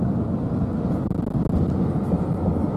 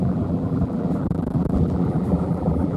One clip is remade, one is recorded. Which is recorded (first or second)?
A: first